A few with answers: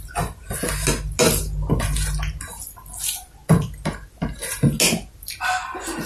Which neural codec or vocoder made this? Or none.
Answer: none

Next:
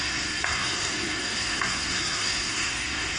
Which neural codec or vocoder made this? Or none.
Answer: codec, SNAC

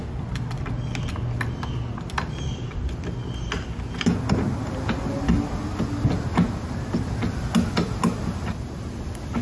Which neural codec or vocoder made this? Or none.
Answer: none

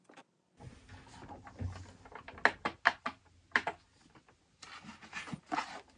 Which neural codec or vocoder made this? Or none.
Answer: none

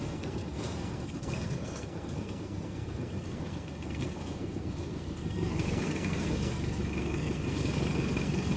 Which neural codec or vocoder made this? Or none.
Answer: codec, SNAC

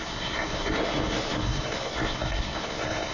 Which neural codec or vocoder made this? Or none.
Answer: codec, SNAC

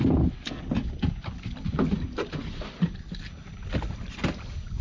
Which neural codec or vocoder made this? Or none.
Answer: none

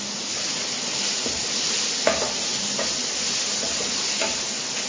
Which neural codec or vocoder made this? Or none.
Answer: none